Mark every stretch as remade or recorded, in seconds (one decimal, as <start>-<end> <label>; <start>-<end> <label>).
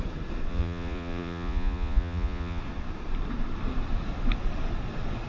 0.0-0.5 recorded; 0.5-2.6 remade; 2.6-5.3 recorded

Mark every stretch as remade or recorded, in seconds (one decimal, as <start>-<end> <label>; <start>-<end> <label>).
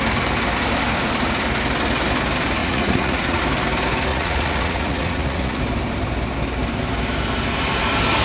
0.0-2.6 recorded; 2.6-3.4 remade; 3.4-4.1 recorded; 4.1-5.6 remade; 5.6-8.2 recorded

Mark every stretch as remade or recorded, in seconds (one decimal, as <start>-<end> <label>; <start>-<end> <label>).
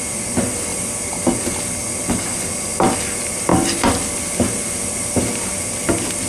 0.0-6.3 recorded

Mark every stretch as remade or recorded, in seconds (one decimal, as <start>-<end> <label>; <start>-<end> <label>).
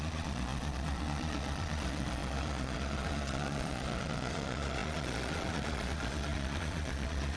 0.0-7.4 remade